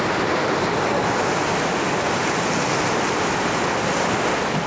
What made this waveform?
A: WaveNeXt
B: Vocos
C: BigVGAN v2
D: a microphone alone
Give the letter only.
D